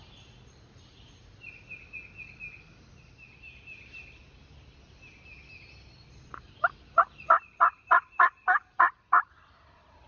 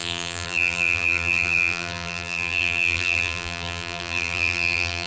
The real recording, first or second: first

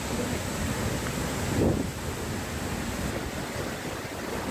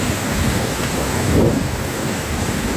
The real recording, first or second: first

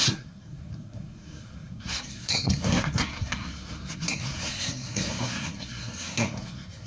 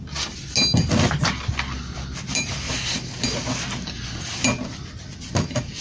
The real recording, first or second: second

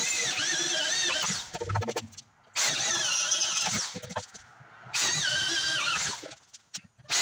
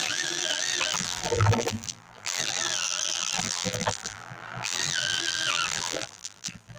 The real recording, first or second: first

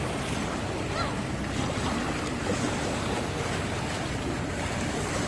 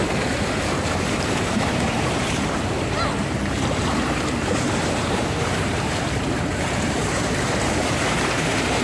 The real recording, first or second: first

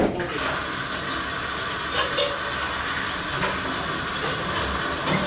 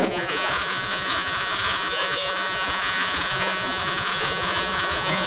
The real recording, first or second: first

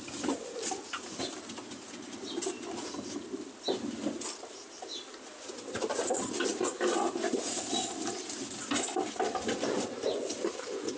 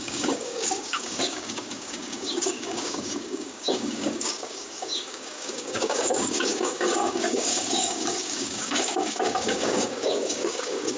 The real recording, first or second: first